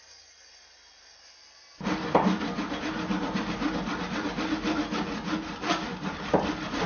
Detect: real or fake real